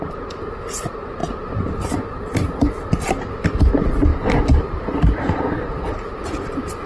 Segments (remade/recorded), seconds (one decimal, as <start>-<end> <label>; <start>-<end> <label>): 0.0-6.9 recorded